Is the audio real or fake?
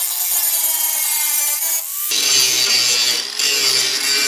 real